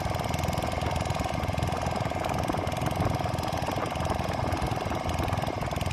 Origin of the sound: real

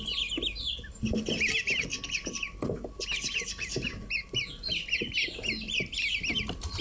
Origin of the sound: real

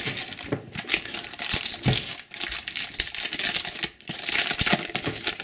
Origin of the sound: real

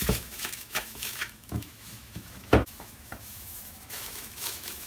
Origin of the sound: fake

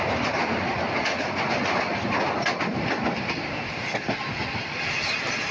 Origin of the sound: real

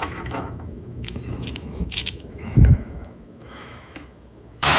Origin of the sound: fake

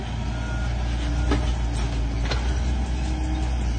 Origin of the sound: real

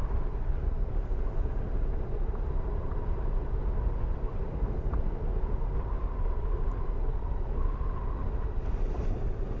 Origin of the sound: real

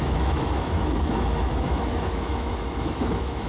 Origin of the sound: fake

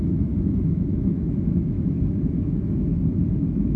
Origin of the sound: fake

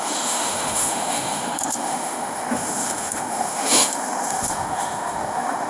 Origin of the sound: fake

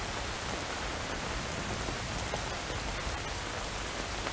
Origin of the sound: real